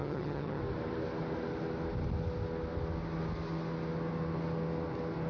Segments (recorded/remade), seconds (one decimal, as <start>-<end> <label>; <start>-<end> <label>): 0.0-0.6 remade; 0.6-5.3 recorded